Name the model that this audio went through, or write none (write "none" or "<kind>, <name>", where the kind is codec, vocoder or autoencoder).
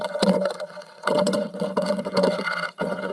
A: vocoder, WaveNeXt